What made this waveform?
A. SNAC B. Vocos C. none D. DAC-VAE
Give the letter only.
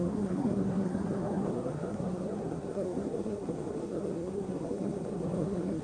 A